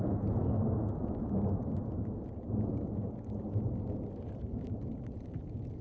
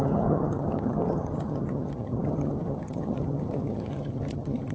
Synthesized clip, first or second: second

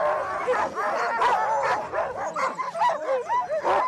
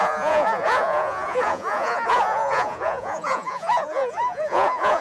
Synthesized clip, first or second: second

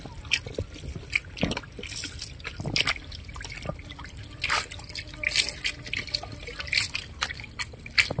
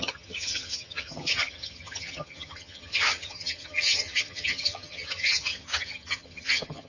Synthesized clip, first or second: second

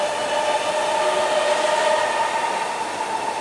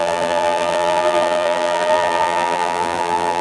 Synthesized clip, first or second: second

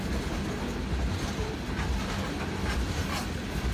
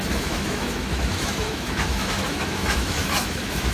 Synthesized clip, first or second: second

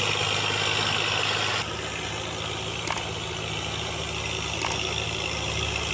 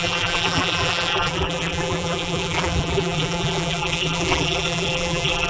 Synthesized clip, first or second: second